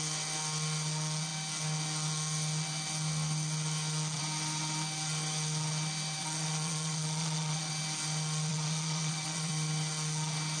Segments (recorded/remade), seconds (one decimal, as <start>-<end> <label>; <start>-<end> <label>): 0.0-6.2 recorded; 6.2-7.7 remade; 7.7-8.5 recorded; 8.5-9.5 remade; 9.5-10.6 recorded